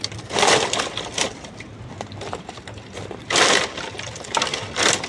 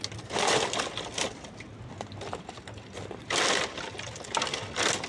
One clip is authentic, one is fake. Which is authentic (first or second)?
second